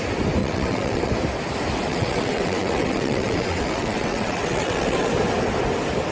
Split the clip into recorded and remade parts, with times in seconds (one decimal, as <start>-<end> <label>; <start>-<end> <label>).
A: 0.0-0.4 recorded; 0.4-1.1 remade; 1.1-1.9 recorded; 1.9-5.1 remade; 5.1-6.1 recorded